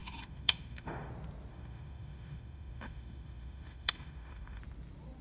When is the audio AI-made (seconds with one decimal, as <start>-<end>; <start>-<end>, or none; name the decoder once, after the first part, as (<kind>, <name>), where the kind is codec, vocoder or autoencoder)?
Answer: 0.0-1.1 (autoencoder, DAC-VAE); 1.5-4.6